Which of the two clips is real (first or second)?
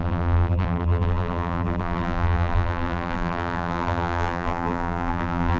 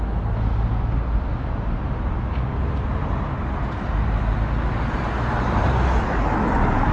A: second